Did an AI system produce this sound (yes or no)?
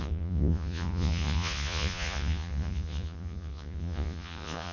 yes